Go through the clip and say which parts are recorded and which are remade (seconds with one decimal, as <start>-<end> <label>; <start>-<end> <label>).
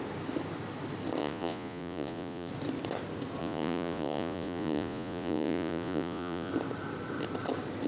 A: 0.0-1.2 recorded; 1.2-2.5 remade; 2.5-3.4 recorded; 3.4-6.5 remade; 6.5-7.9 recorded